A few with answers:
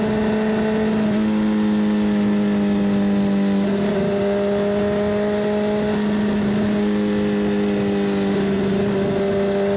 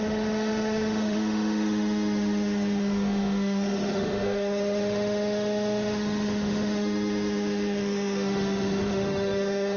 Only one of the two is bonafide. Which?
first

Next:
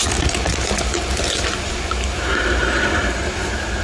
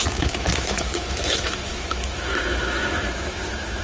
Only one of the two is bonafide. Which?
first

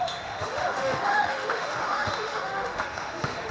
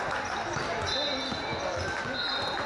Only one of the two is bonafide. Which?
second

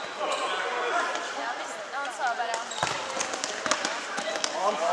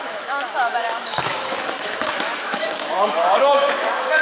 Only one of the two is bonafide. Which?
first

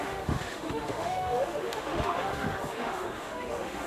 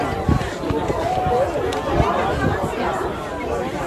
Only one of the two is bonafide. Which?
second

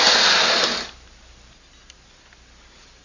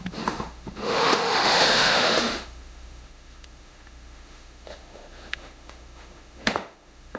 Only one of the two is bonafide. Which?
first